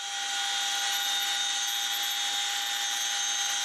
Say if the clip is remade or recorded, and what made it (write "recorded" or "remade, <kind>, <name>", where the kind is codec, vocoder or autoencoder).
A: recorded